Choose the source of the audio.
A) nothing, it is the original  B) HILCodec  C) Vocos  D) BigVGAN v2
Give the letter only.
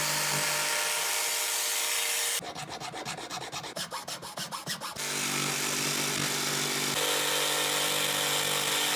A